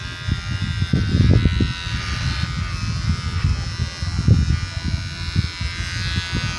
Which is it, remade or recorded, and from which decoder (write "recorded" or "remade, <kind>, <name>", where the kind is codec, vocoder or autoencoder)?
recorded